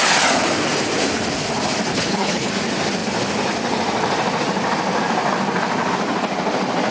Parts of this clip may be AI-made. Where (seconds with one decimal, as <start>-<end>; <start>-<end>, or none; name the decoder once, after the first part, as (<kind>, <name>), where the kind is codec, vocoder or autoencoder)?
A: 1.9-2.5 (codec, HILCodec)